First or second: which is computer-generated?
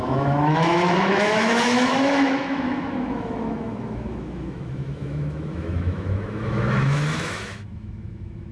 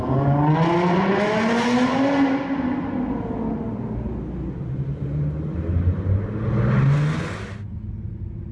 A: first